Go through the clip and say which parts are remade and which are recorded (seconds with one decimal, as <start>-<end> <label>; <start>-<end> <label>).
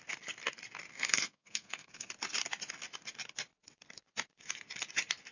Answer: 0.0-0.9 recorded; 0.9-2.1 remade; 2.1-5.3 recorded